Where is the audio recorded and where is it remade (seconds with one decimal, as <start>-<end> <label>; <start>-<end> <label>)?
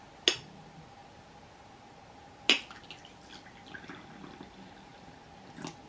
0.0-5.9 recorded